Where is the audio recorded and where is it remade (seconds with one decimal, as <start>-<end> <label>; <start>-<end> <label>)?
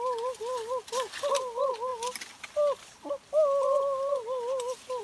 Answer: 0.0-5.0 recorded